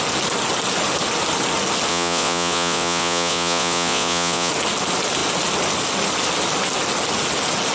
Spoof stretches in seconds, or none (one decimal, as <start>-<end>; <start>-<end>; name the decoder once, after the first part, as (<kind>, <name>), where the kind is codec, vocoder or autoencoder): 1.9-4.5 (vocoder, Vocos)